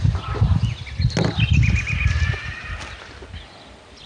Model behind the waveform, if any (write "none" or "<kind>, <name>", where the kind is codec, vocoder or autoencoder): none